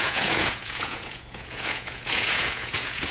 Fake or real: fake